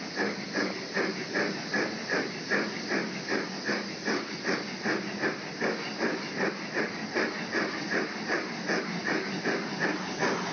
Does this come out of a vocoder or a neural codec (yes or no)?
no